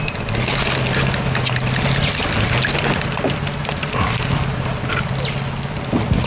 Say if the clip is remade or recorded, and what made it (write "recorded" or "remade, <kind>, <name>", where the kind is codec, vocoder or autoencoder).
recorded